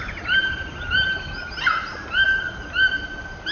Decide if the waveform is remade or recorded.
recorded